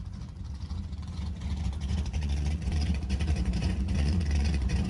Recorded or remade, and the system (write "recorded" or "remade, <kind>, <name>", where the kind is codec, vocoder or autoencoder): remade, vocoder, Vocos